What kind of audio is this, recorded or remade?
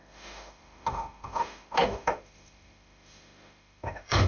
remade